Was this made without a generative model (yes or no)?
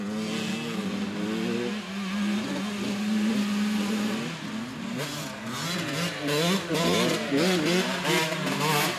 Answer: yes